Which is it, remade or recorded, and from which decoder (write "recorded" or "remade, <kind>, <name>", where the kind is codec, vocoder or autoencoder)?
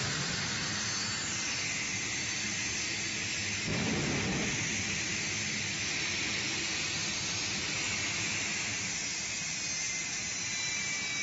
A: recorded